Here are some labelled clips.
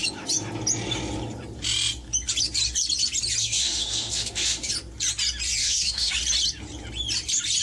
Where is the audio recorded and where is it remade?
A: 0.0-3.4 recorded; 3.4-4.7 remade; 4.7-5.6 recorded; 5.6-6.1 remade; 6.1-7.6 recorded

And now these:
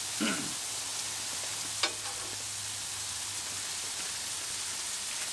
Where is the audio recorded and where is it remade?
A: 0.0-5.3 recorded

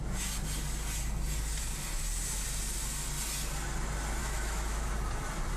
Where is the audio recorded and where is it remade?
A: 0.0-4.2 recorded; 4.2-4.9 remade; 4.9-5.6 recorded

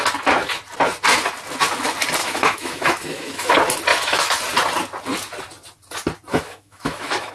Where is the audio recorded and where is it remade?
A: 0.0-2.2 recorded; 2.2-3.5 remade; 3.5-3.9 recorded; 3.9-4.4 remade; 4.4-6.3 recorded; 6.3-7.3 remade

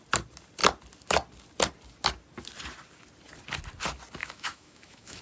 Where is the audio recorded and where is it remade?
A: 0.0-4.2 recorded; 4.2-5.2 remade